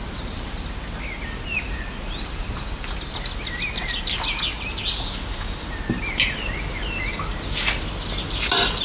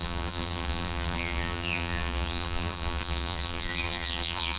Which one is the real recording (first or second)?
first